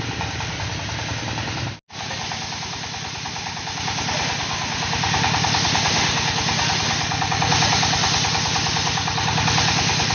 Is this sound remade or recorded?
recorded